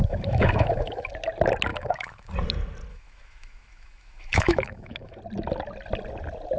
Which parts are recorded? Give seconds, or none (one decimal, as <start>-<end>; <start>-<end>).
1.1-1.7; 2.3-2.9; 5.2-6.6